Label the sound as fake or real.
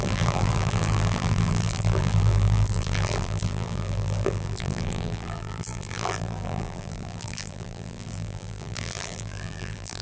fake